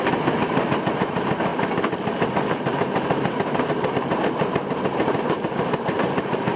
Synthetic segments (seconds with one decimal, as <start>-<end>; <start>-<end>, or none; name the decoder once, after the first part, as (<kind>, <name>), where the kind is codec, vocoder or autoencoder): 0.0-6.6 (vocoder, BigVGAN v2)